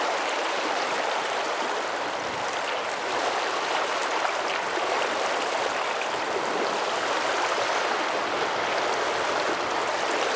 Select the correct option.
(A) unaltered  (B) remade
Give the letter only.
A